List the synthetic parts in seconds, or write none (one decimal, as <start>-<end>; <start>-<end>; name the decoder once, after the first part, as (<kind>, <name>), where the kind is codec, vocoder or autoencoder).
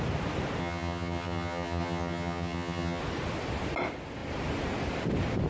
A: 0.6-3.0 (vocoder, HiFi-GAN)